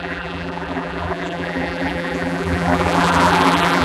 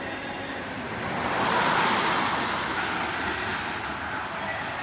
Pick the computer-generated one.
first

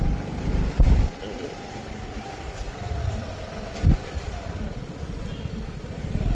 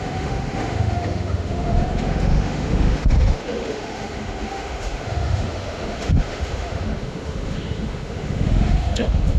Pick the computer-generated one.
second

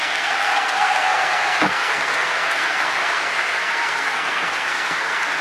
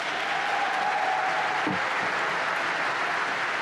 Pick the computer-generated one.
first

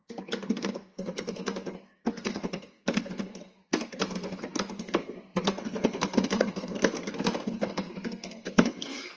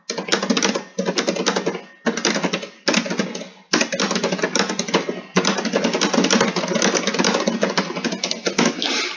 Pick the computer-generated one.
first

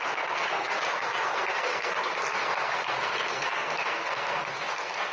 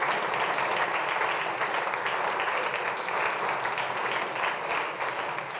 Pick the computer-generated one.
first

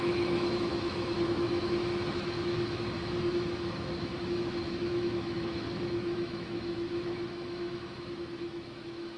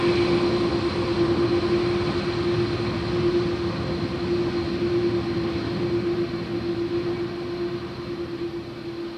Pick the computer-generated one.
first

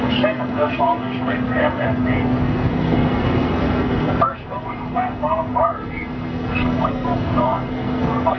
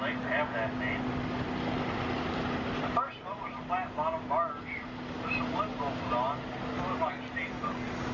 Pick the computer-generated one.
first